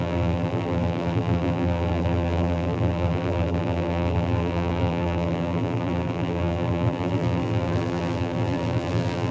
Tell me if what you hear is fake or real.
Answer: fake